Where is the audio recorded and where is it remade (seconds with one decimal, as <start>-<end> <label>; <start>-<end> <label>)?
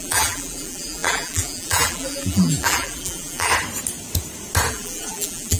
0.0-3.5 remade; 3.5-4.7 recorded; 4.7-5.6 remade